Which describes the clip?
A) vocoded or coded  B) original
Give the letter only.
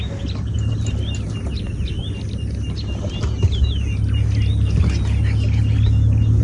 B